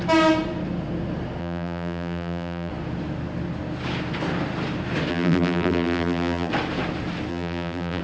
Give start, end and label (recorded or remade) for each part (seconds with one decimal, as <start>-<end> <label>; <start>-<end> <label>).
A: 0.0-1.4 recorded; 1.4-2.7 remade; 2.7-5.1 recorded; 5.1-6.5 remade; 6.5-7.3 recorded; 7.3-8.0 remade